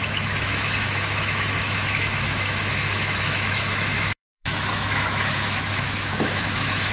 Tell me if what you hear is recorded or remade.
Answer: remade